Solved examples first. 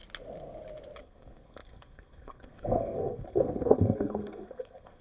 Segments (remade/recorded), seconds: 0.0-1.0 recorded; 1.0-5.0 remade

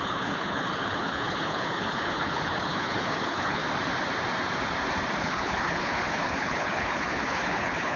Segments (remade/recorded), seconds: 0.0-3.6 remade; 3.6-5.2 recorded; 5.2-8.0 remade

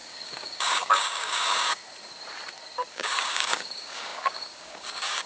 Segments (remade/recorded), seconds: 0.0-1.8 remade; 1.8-2.9 recorded; 2.9-5.3 remade

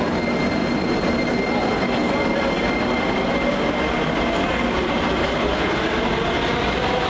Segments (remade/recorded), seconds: 0.0-5.2 recorded; 5.2-5.8 remade; 5.8-7.1 recorded